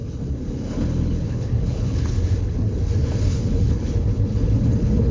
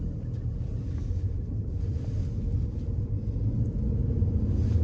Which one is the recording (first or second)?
second